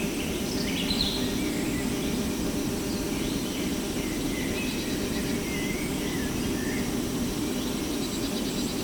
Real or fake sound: real